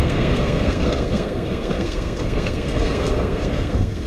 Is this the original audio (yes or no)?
no